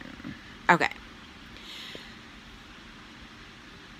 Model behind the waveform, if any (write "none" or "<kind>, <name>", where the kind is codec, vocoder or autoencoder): none